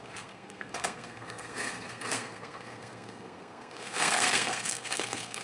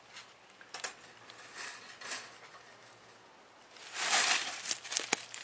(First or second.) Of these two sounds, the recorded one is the second